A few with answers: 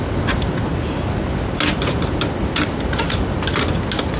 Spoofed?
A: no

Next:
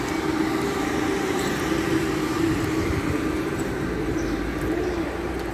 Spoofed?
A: yes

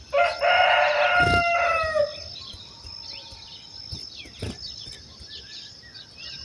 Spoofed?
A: no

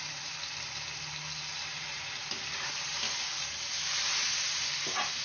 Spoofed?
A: no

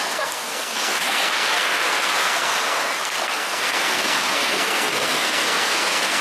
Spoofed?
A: yes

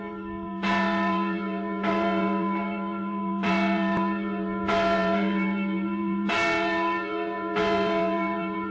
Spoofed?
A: yes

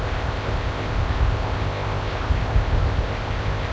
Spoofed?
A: yes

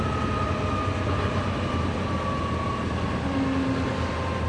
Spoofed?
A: no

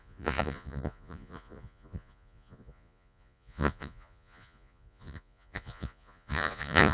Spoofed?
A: yes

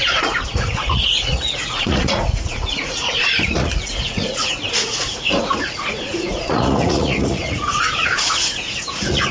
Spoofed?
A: yes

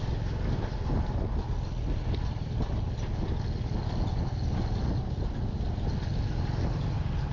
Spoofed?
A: no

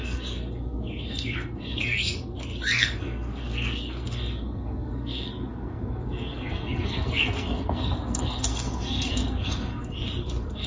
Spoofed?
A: yes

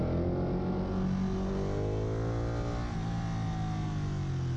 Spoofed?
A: no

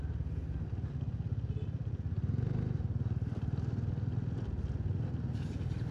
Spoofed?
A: no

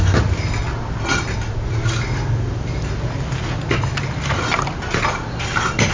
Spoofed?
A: no